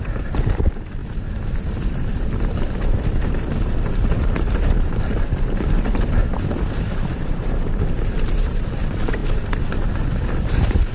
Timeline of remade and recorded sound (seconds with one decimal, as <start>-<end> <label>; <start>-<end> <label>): 0.0-1.0 remade; 1.0-1.6 recorded; 1.6-6.2 remade; 6.2-6.8 recorded; 6.8-10.9 remade